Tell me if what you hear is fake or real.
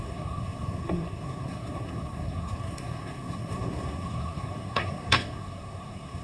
fake